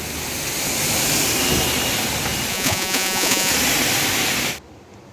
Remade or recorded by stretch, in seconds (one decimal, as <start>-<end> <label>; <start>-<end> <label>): 0.0-2.5 recorded; 2.5-3.5 remade; 3.5-5.1 recorded